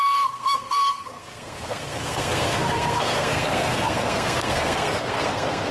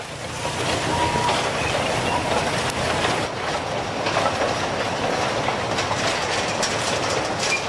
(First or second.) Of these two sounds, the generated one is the first